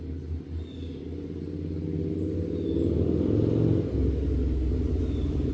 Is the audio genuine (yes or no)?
yes